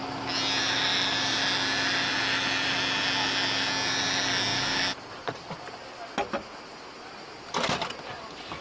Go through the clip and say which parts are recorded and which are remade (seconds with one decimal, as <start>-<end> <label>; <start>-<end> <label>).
0.0-8.6 recorded